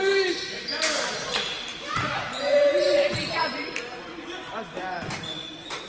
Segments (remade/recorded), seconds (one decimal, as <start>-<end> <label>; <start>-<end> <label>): 0.0-1.7 recorded; 1.7-3.5 remade; 3.5-5.9 recorded